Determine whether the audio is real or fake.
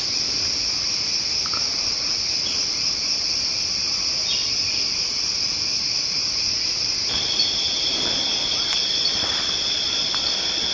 fake